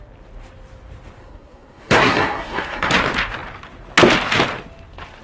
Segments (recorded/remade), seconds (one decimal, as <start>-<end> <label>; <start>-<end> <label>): 0.0-1.2 recorded; 1.2-2.9 remade; 2.9-5.2 recorded